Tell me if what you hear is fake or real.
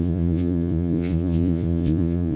fake